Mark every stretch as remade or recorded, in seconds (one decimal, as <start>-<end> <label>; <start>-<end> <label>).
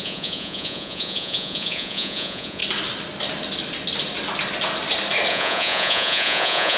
0.0-2.6 remade; 2.6-5.3 recorded; 5.3-6.8 remade